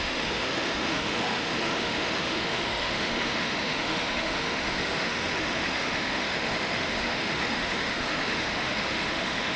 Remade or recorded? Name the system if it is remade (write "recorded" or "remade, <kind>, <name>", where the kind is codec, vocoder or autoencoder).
remade, autoencoder, DAC-VAE